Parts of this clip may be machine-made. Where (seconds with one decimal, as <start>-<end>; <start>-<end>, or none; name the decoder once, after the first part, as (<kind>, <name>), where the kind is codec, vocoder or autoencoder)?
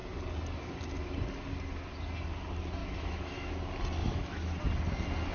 2.8-3.5 (autoencoder, DAC-VAE); 4.0-4.5